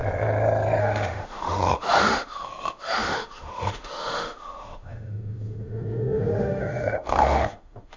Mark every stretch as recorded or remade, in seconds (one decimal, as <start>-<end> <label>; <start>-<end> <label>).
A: 0.0-0.8 recorded; 0.8-8.0 remade